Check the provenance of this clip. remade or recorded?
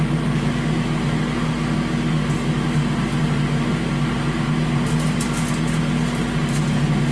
recorded